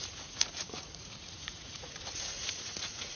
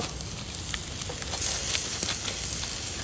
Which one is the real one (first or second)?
second